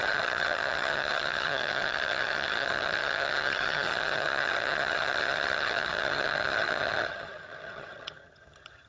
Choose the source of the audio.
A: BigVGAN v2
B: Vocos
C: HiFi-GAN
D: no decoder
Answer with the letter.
C